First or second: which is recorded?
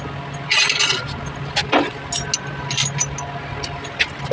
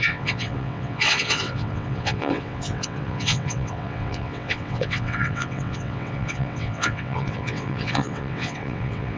first